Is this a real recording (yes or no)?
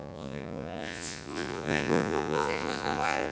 no